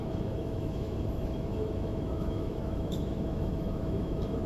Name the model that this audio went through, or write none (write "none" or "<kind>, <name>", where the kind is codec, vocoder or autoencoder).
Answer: autoencoder, DAC-VAE